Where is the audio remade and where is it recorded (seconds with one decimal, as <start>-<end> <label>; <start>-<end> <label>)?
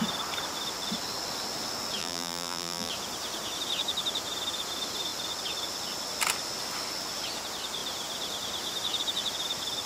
0.0-2.0 recorded; 2.0-2.9 remade; 2.9-9.9 recorded